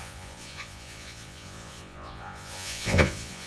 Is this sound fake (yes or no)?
yes